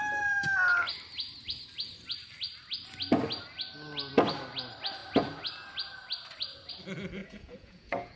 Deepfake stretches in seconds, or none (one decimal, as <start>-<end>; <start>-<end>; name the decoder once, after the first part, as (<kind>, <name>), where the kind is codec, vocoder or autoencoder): 7.2-8.2 (vocoder, Vocos)